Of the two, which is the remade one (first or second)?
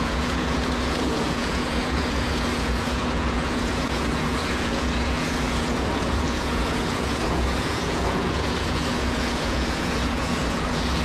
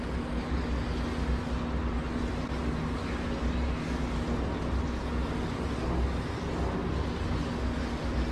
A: first